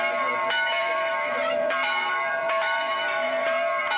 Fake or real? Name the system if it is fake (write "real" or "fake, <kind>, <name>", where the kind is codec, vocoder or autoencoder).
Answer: fake, vocoder, BigVGAN v2